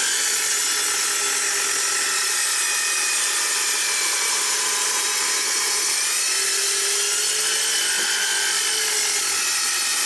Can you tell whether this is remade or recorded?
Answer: recorded